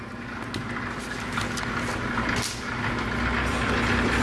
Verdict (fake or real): real